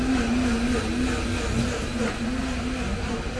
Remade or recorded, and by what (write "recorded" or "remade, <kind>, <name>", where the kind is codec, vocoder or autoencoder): recorded